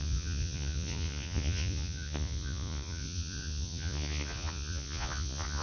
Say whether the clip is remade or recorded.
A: remade